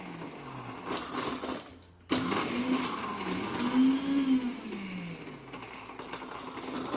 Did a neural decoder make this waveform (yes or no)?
no